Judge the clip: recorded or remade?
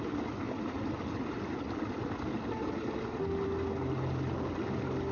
recorded